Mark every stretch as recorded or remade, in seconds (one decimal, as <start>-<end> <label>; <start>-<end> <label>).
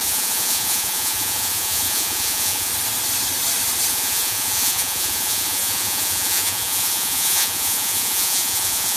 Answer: 0.0-2.7 remade; 2.7-3.9 recorded; 3.9-9.0 remade